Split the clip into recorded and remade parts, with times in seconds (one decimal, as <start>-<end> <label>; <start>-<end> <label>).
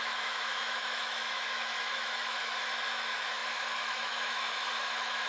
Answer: 0.0-5.3 remade